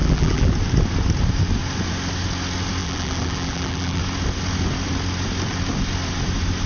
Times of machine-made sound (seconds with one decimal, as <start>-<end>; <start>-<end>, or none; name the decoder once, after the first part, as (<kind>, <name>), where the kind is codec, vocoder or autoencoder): 0.0-0.5 (vocoder, BigVGAN v2); 2.8-4.0